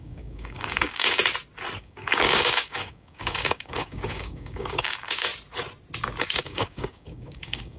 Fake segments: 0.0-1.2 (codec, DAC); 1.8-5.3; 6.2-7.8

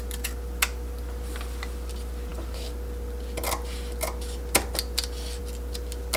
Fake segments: none

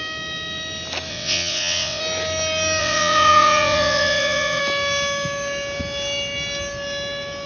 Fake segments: 1.1-2.0 (vocoder, WaveNeXt); 2.8-4.6

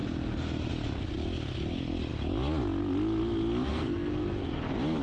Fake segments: 3.7-4.6 (codec, SNAC)

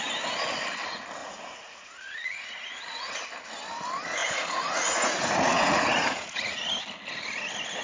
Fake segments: 1.2-3.2 (vocoder, Vocos); 4.2-6.6